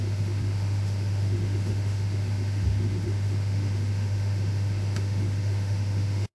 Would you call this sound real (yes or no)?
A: no